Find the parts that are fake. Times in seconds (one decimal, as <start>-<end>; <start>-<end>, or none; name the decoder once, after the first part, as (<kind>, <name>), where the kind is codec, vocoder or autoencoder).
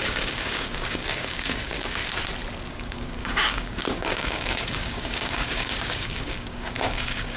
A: 0.0-2.0 (codec, DAC); 2.7-7.4